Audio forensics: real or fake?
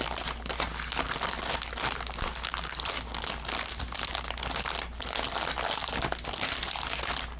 real